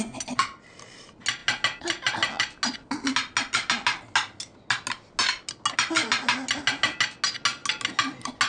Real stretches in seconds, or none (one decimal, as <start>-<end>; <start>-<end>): 0.0-8.5